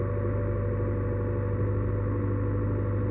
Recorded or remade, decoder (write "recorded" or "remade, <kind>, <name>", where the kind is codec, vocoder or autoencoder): recorded